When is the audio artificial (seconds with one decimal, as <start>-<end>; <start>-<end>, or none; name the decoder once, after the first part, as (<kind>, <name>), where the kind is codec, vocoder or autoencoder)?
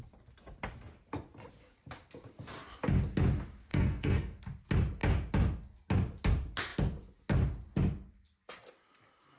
3.7-4.4 (codec, SNAC)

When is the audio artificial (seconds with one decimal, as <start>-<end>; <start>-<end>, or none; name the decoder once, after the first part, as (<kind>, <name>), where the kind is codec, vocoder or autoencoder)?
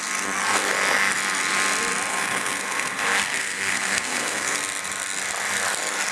2.1-4.6 (codec, SNAC)